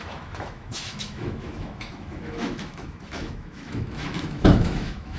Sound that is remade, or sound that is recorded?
remade